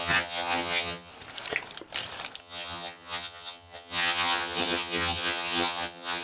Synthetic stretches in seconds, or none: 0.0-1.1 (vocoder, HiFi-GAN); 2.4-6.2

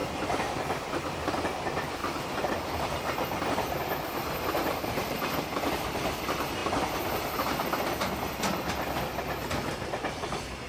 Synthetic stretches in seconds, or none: 0.0-0.6 (vocoder, BigVGAN v2); 2.0-2.5; 4.6-5.7

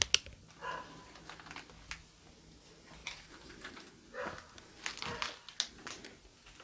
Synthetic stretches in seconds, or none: 3.0-3.9 (vocoder, BigVGAN v2)